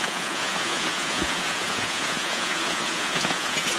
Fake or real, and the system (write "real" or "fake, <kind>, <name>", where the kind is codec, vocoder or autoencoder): fake, vocoder, Vocos